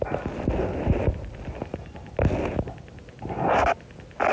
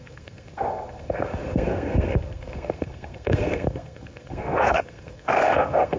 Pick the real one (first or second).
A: first